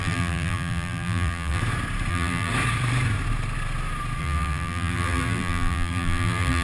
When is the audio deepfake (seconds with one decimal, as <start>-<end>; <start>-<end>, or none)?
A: 0.0-1.6; 2.1-2.5; 4.2-6.6